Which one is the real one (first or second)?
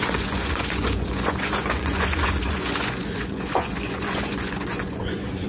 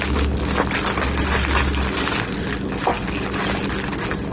second